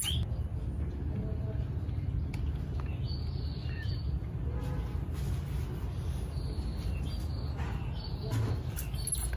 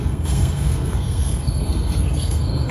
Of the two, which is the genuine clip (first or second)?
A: first